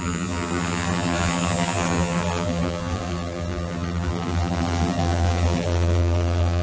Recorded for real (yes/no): no